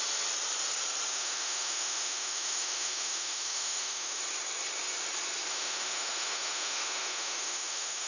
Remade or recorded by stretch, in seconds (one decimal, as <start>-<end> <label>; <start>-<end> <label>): 0.0-1.1 recorded; 1.1-4.2 remade; 4.2-5.5 recorded; 5.5-8.1 remade